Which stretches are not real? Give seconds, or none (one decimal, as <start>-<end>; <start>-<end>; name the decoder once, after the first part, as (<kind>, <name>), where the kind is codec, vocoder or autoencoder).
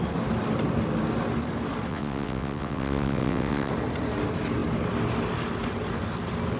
1.9-3.7 (vocoder, WaveNeXt)